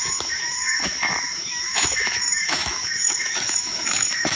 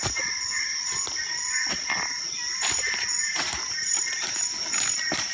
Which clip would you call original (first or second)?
second